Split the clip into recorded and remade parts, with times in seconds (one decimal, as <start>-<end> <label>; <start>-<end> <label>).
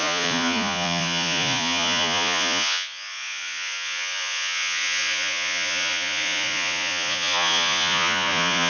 0.0-8.7 remade